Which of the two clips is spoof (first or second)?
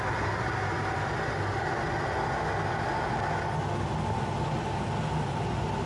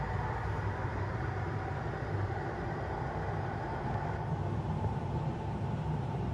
second